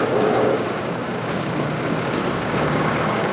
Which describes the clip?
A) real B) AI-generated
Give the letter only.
B